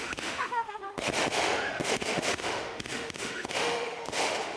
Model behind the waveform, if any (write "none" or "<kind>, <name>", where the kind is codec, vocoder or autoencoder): autoencoder, DAC-VAE